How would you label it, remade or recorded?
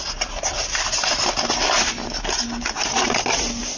recorded